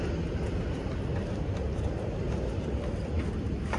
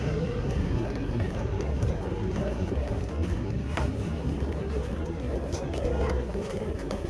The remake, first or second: second